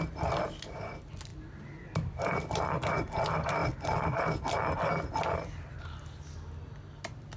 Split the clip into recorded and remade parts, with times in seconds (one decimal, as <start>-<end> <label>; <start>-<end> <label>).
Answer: 0.0-7.4 recorded